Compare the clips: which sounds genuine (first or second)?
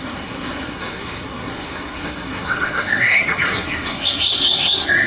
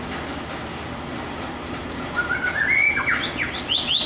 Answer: second